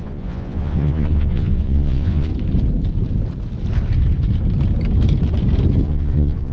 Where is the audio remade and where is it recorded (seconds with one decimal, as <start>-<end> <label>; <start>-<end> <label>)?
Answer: 0.0-2.3 remade; 2.3-5.8 recorded; 5.8-6.5 remade